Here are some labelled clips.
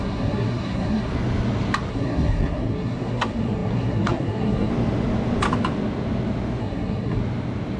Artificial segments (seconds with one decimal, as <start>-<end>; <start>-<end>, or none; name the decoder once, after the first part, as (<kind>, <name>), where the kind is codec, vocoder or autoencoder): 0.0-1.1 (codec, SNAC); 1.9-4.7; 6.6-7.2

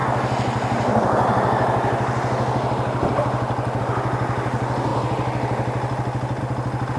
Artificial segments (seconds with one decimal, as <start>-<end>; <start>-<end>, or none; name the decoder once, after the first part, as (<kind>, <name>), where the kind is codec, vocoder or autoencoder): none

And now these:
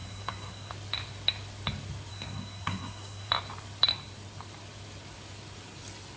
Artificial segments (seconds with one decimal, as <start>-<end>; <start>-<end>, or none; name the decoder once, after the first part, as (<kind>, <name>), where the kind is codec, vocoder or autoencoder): 0.0-0.7 (codec, SNAC); 2.1-3.3

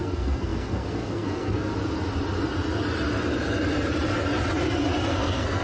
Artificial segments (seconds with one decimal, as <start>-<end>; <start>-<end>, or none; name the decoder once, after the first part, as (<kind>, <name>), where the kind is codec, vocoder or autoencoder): 0.0-1.7 (codec, SNAC); 5.1-5.6

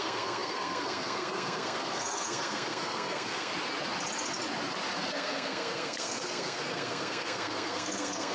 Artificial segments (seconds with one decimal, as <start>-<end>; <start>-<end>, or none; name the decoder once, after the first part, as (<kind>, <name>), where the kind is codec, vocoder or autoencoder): 0.0-3.5 (codec, SNAC); 5.1-8.3

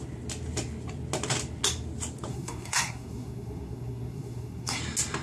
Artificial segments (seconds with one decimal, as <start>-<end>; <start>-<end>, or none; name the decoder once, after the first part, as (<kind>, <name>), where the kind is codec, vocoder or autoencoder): 2.3-4.8 (codec, SNAC)